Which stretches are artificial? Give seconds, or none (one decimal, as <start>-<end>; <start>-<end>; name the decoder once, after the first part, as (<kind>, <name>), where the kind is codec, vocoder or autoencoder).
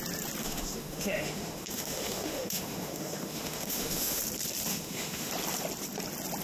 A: 0.4-4.2 (autoencoder, DAC-VAE); 4.7-5.3